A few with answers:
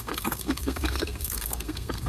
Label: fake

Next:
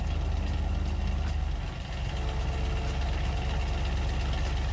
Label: real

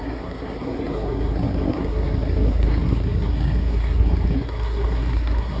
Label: fake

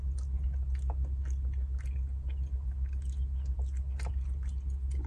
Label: real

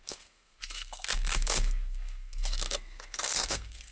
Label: fake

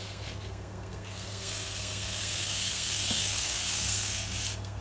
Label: fake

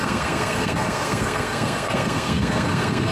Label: fake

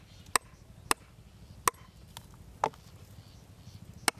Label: real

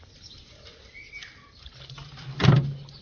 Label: real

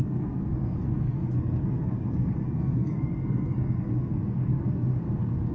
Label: fake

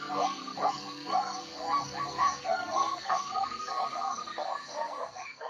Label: fake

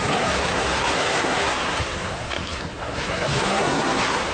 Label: fake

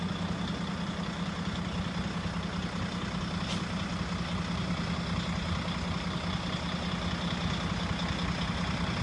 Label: real